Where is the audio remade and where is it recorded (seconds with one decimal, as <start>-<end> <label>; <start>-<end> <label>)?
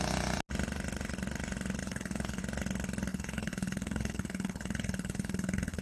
0.0-1.8 recorded; 1.8-2.4 remade; 2.4-3.1 recorded; 3.1-5.8 remade